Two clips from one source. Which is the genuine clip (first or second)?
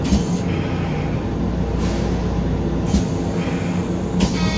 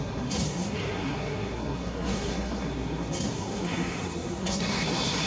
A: first